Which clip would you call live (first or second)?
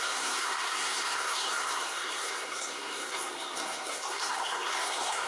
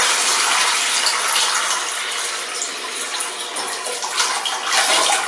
second